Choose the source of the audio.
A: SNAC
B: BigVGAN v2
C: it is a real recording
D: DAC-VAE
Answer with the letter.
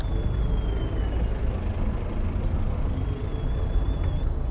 C